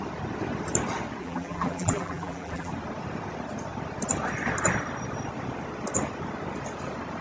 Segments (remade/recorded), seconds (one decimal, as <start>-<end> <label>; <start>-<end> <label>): 0.0-1.2 recorded; 1.2-2.7 remade; 2.7-7.2 recorded